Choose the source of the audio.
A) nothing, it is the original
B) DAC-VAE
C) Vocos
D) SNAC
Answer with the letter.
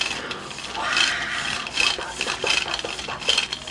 A